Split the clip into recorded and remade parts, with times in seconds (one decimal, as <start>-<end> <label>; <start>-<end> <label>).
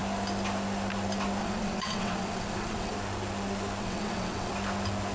0.0-1.4 recorded; 1.4-2.9 remade; 2.9-3.8 recorded; 3.8-4.5 remade; 4.5-5.1 recorded